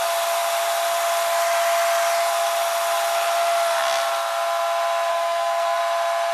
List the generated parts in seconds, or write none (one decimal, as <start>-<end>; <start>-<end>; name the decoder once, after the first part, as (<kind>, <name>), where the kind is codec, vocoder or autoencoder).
5.1-5.8 (codec, SNAC)